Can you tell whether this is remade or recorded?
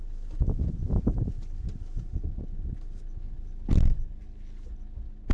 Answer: recorded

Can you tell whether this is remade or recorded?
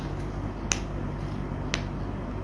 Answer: recorded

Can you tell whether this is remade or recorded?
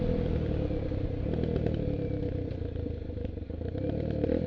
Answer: recorded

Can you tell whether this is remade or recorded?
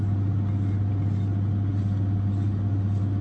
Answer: recorded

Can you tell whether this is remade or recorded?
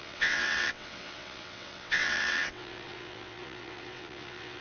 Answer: remade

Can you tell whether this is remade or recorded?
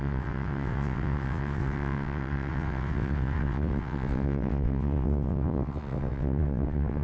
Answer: remade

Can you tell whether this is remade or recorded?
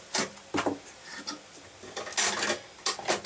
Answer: recorded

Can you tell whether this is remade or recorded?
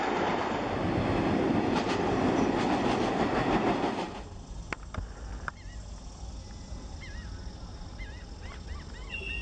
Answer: recorded